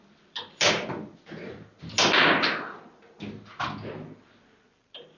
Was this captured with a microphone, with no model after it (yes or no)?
yes